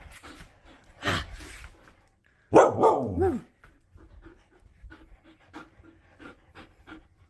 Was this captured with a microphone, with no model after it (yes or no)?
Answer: yes